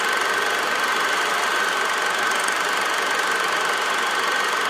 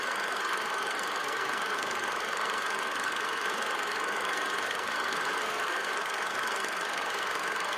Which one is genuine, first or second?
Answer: first